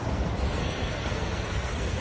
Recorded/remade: remade